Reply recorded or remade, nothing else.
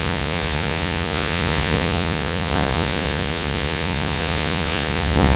remade